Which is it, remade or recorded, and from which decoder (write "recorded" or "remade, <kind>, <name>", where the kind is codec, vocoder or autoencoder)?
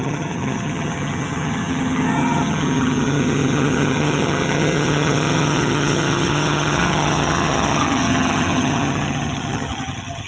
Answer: remade, vocoder, HiFi-GAN